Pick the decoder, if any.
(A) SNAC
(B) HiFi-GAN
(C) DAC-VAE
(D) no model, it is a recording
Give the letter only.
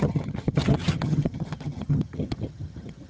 B